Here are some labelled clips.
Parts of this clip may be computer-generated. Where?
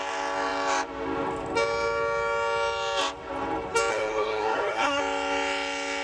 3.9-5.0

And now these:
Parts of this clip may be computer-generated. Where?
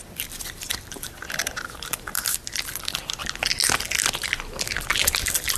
0.0-3.2; 4.6-5.6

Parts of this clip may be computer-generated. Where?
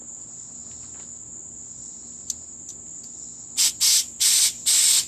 none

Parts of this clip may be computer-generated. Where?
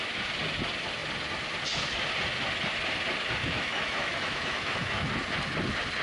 3.4-5.1